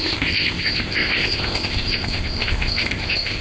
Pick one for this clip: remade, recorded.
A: remade